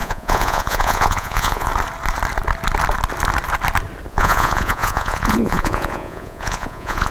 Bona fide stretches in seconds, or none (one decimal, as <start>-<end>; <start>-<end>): 1.7-4.1